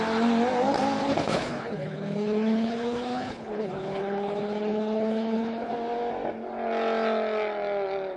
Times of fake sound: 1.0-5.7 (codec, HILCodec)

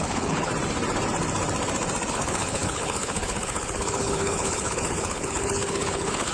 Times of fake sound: 0.0-0.5 (codec, HILCodec); 2.1-6.3

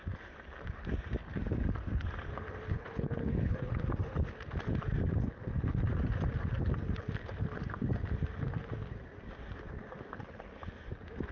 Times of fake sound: 2.7-3.8 (codec, HILCodec)

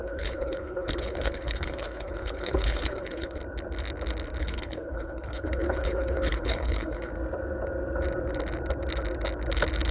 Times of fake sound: 0.0-3.4 (codec, HILCodec); 4.4-7.1

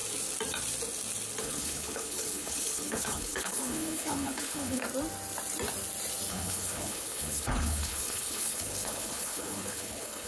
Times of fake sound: 1.4-4.8 (codec, HILCodec); 6.3-10.3